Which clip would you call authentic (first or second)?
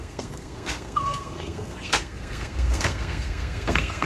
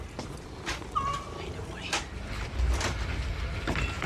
second